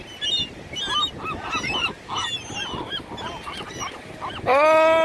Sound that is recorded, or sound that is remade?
recorded